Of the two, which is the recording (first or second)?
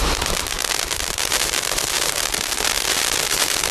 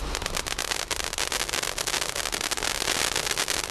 second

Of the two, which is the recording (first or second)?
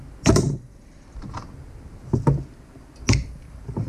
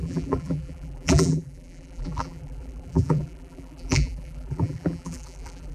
first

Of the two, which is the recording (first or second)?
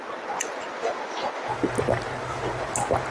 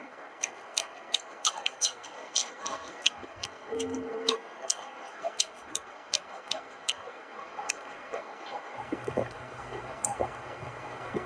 first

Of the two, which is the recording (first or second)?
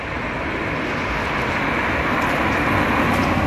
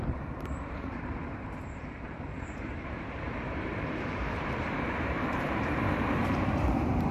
first